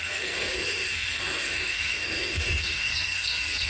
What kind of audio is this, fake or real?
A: fake